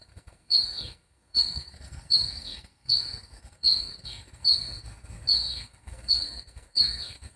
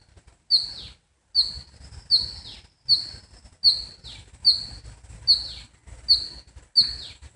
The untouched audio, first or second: second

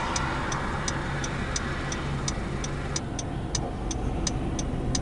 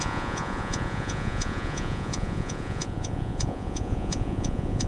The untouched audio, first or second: first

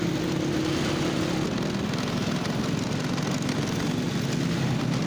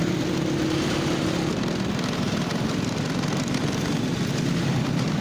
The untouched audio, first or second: first